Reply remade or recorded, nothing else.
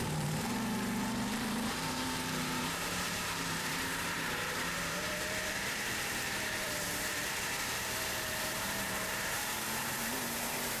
remade